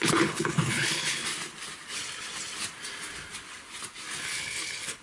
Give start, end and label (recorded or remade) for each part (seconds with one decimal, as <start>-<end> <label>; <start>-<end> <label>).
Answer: 0.0-1.2 remade; 1.2-4.2 recorded; 4.2-5.0 remade